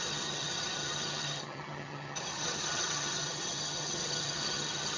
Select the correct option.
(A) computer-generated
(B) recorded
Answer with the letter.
A